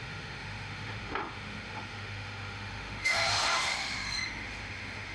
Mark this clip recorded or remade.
remade